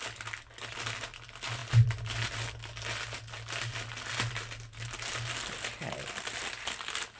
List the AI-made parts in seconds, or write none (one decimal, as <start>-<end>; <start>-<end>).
none